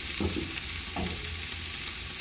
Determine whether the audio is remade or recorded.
recorded